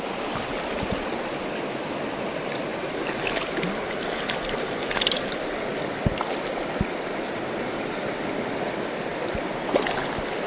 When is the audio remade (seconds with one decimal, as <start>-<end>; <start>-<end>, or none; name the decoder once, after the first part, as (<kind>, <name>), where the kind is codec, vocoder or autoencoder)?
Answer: none